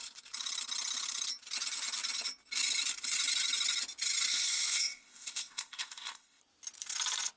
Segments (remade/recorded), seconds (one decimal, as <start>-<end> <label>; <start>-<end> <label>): 0.0-4.3 recorded; 4.3-6.4 remade; 6.4-7.4 recorded